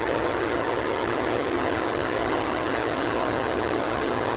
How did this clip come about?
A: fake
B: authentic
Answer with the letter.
A